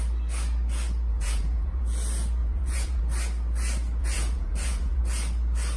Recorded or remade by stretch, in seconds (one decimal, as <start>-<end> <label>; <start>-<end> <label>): 0.0-1.1 recorded; 1.1-1.8 remade; 1.8-2.4 recorded; 2.4-3.0 remade; 3.0-4.0 recorded; 4.0-5.0 remade; 5.0-5.8 recorded